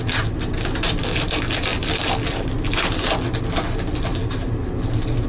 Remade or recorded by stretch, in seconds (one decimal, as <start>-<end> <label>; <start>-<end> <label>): 0.0-5.3 recorded